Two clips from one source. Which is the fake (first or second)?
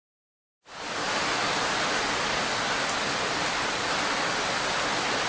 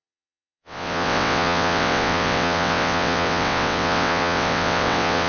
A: second